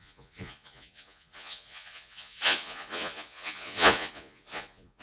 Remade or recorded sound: remade